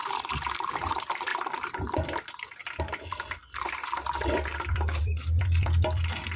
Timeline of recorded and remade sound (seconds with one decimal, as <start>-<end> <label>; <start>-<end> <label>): 0.0-0.6 recorded; 0.6-6.4 remade